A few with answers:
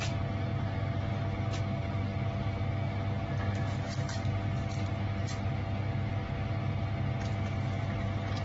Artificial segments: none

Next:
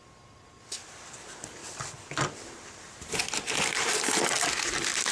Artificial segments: none

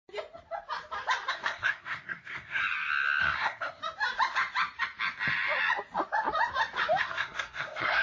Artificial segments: 1.3-2.6; 3.2-3.8; 7.0-8.0

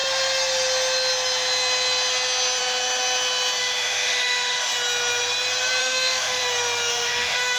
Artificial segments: 3.6-4.7; 5.8-6.4; 6.9-7.6

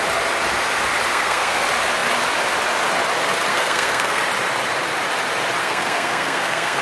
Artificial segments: 1.1-1.6; 3.5-4.2; 5.6-6.8

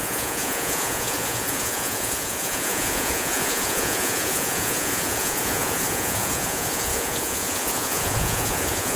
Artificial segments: 0.0-9.0

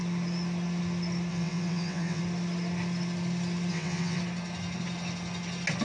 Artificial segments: 1.3-2.2; 3.7-4.2